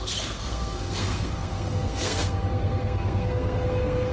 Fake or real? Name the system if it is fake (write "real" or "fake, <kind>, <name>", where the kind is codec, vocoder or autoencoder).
fake, codec, SNAC